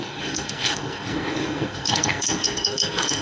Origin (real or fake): fake